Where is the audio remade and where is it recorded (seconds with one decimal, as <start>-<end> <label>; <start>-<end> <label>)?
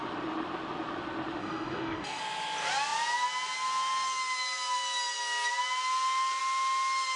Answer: 0.0-1.4 recorded; 1.4-2.2 remade; 2.2-7.2 recorded